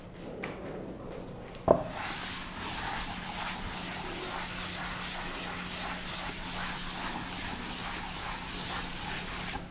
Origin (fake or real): real